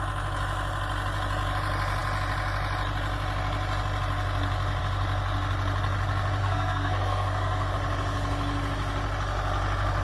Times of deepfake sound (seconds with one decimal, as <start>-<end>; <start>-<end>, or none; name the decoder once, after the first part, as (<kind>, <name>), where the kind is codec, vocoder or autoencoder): 6.4-7.7 (codec, SNAC)